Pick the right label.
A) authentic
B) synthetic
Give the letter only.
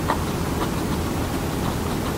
A